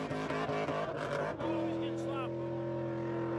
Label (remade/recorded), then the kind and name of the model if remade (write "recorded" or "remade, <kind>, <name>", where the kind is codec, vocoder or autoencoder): recorded